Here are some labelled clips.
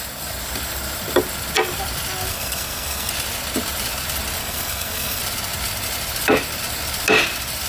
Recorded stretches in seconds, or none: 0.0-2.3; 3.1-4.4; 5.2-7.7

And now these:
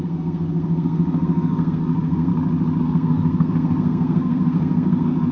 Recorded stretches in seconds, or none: 2.3-2.8

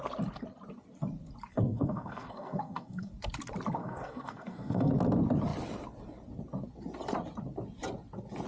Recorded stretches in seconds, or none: 0.0-1.5; 3.1-3.8; 4.9-8.5